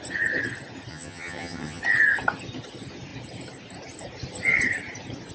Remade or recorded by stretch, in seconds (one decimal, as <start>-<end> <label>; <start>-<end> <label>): 0.0-0.9 recorded; 0.9-1.8 remade; 1.8-5.3 recorded